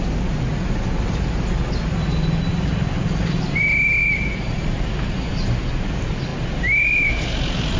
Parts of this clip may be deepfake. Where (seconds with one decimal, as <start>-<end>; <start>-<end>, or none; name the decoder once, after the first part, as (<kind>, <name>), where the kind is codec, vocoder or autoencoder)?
2.5-3.6 (vocoder, BigVGAN v2); 4.0-5.3